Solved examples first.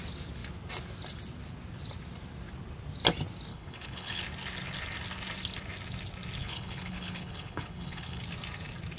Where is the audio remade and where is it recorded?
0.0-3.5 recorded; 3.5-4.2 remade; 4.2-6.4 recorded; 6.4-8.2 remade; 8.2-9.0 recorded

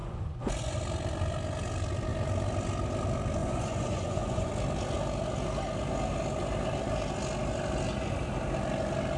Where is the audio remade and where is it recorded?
0.0-0.8 remade; 0.8-3.4 recorded; 3.4-4.5 remade; 4.5-9.2 recorded

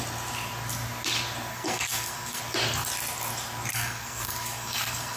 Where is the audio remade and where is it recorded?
0.0-1.5 recorded; 1.5-2.4 remade; 2.4-3.7 recorded; 3.7-5.2 remade

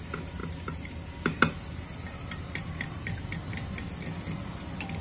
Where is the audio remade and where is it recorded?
0.0-0.4 recorded; 0.4-3.4 remade; 3.4-5.0 recorded